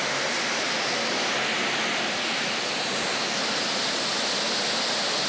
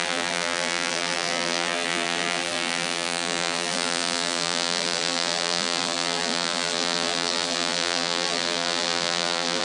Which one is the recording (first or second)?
first